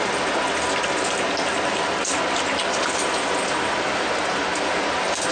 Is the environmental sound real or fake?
real